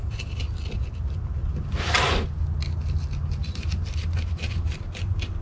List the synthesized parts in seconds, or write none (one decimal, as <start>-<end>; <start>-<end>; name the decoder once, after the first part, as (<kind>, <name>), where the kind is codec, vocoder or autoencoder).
0.0-0.5 (vocoder, BigVGAN v2); 3.4-4.8